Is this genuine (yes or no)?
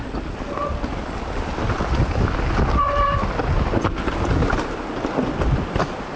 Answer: yes